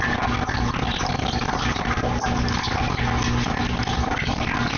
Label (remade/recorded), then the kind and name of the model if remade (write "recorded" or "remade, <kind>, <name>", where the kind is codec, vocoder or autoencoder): recorded